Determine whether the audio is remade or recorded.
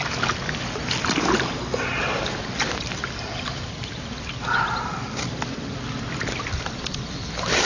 recorded